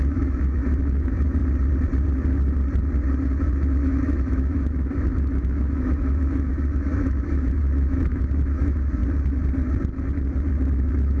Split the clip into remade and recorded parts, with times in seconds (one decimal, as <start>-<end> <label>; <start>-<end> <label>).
0.0-1.4 remade; 1.4-3.4 recorded; 3.4-9.0 remade; 9.0-10.5 recorded; 10.5-11.2 remade